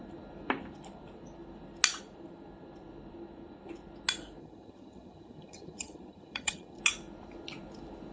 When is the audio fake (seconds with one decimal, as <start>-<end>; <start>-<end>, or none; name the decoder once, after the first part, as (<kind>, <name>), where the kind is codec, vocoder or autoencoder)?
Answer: 4.4-6.8 (vocoder, HiFi-GAN)